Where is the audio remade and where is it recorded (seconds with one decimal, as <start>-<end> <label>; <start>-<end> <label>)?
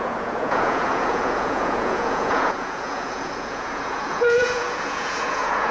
0.0-5.7 remade